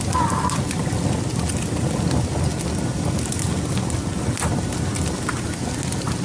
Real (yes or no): yes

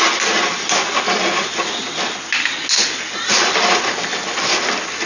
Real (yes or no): yes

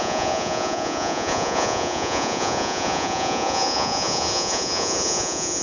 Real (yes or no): no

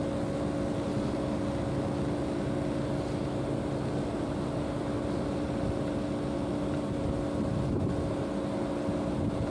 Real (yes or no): yes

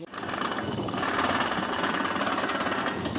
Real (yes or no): no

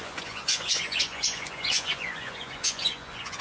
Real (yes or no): no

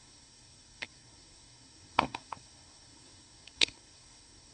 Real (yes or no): no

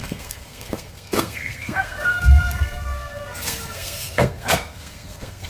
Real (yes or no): no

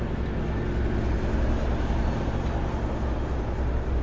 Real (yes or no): yes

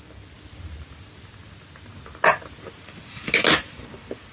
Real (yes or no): yes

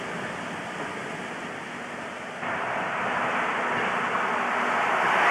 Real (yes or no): yes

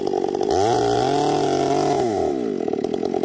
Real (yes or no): yes